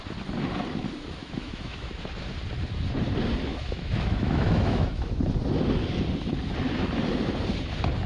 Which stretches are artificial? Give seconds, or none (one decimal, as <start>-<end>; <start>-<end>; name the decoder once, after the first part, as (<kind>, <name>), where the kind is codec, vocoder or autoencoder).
1.2-1.9 (autoencoder, DAC-VAE); 3.5-5.2